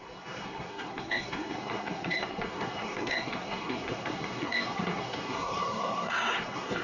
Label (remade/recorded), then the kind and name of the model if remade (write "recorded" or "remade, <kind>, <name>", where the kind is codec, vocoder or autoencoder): remade, codec, SNAC